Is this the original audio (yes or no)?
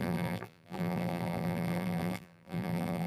no